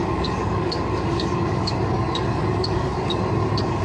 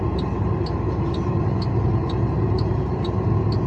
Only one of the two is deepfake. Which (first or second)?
first